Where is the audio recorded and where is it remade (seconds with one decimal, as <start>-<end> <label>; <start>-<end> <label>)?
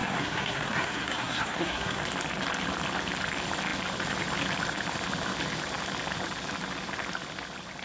0.0-2.0 remade; 2.0-7.8 recorded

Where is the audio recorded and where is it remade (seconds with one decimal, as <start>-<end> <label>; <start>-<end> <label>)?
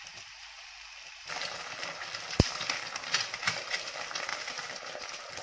0.0-1.1 recorded; 1.1-2.5 remade; 2.5-4.3 recorded; 4.3-5.4 remade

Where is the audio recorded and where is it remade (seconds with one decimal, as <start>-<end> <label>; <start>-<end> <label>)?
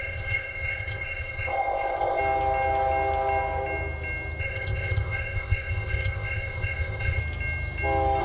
0.0-2.2 remade; 2.2-4.4 recorded; 4.4-7.2 remade; 7.2-8.2 recorded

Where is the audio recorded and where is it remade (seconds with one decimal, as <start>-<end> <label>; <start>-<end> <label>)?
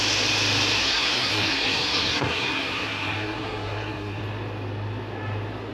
0.0-0.8 recorded; 0.8-4.2 remade; 4.2-5.7 recorded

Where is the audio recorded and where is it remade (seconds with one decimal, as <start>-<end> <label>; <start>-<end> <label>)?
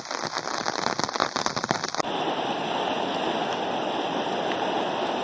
0.0-5.2 recorded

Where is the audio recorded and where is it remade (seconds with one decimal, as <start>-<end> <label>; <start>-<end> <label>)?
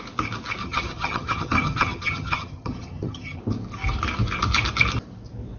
0.0-0.6 recorded; 0.6-3.4 remade; 3.4-5.6 recorded